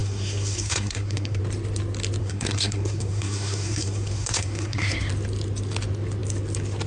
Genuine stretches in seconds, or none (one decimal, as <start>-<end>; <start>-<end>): 1.4-2.2; 5.1-6.9